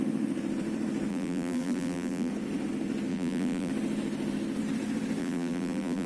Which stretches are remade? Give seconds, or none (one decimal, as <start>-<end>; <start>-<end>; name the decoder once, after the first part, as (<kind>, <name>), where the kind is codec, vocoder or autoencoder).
1.1-2.3 (vocoder, BigVGAN v2); 3.1-3.7; 5.2-6.1